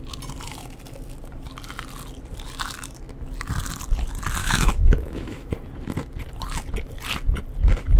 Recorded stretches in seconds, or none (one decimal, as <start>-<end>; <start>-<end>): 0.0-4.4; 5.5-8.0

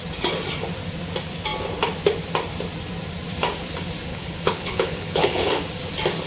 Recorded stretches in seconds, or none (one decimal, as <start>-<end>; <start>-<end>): 0.0-4.1; 5.6-6.3

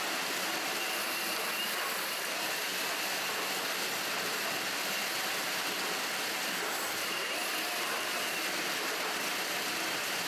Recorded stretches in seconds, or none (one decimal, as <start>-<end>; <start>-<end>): 0.0-10.3